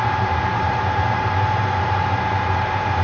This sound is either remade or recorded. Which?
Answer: remade